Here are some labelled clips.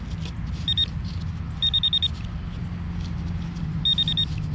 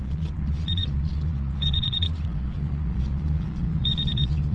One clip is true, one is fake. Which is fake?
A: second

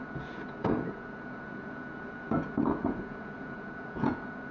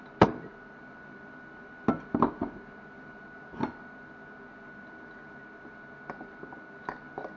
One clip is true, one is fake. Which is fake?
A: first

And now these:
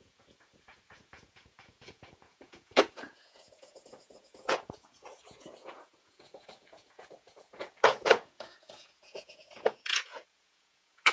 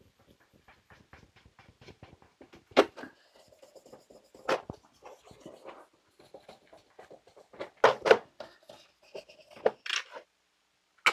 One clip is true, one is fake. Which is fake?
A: first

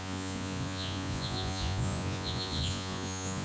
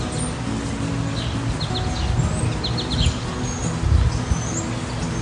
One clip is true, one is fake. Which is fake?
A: first